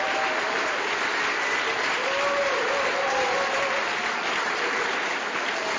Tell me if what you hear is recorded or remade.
recorded